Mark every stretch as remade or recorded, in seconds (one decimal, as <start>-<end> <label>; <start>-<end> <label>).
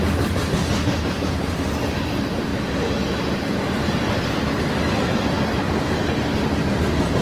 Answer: 0.0-7.2 recorded